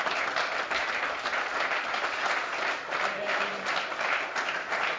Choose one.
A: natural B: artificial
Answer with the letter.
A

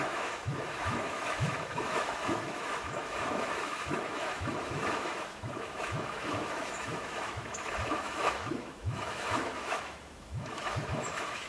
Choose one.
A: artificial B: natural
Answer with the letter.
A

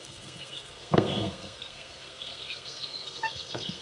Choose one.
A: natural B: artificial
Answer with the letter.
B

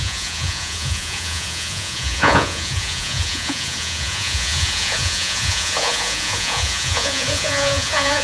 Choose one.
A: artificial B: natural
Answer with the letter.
A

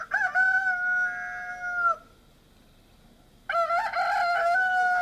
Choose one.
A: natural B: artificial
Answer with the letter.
A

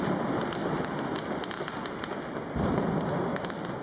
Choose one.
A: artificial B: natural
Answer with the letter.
B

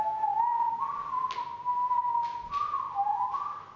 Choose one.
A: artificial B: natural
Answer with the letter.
B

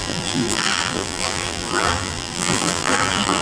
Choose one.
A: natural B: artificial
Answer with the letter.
B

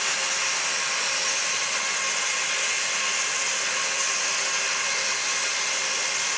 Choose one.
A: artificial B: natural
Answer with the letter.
B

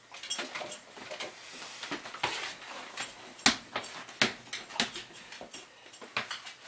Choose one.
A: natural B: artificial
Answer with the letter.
A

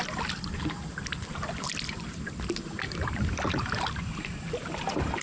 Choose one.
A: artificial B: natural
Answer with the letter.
B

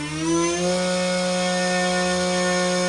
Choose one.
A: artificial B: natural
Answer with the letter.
B